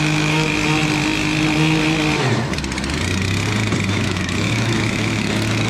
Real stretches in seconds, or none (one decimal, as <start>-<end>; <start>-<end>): 0.5-3.9